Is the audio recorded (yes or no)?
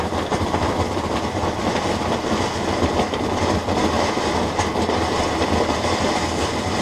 yes